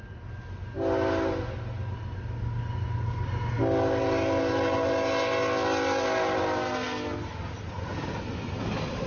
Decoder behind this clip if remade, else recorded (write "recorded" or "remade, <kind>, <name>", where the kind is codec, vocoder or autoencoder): recorded